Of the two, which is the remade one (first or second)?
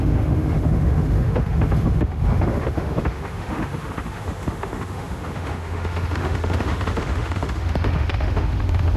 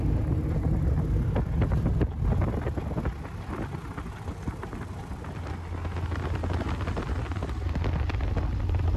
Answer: first